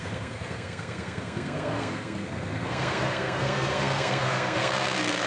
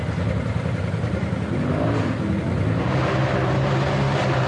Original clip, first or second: second